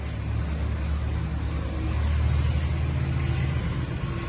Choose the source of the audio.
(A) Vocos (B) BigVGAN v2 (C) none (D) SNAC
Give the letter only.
C